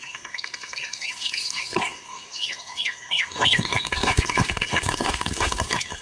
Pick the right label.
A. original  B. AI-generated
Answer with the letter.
B